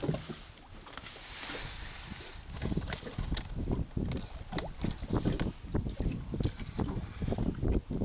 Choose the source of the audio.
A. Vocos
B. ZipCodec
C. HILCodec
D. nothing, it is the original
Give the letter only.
D